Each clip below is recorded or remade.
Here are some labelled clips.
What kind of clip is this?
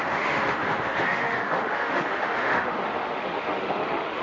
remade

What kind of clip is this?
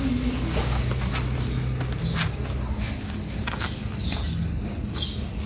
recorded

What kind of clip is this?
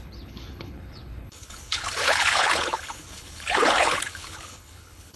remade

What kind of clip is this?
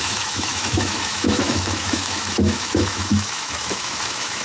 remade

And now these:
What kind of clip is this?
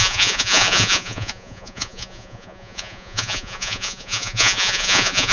remade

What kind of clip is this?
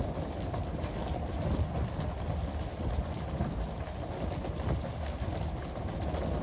recorded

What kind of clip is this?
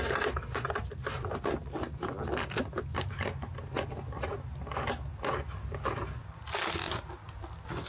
recorded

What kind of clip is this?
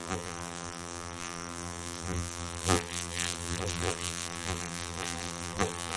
remade